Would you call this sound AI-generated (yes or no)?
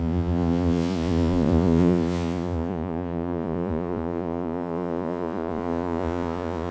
yes